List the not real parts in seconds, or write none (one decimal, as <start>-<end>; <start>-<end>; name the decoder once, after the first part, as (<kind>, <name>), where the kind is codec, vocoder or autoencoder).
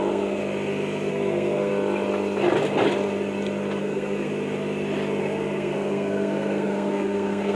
0.0-0.4 (codec, SNAC); 1.1-1.7; 3.8-4.3; 5.2-7.5